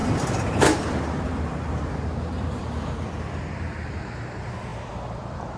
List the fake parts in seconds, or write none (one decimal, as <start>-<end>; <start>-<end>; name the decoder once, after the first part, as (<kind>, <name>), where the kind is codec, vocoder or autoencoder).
0.0-5.6 (vocoder, BigVGAN v2)